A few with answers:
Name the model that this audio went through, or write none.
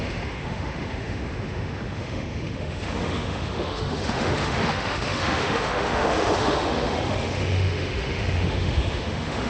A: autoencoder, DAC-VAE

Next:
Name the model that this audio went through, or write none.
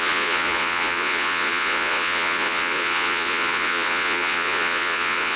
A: vocoder, Vocos